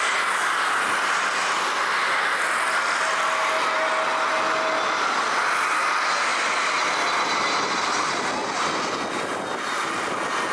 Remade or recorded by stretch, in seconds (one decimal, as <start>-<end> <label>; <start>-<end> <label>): 0.0-10.5 recorded